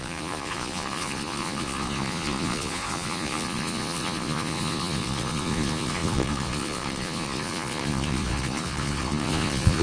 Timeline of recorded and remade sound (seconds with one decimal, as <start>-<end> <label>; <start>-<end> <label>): 0.0-9.8 remade